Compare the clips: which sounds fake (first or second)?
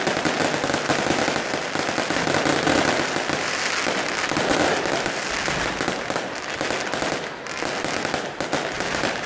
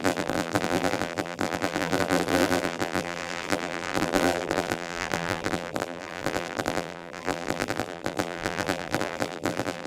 second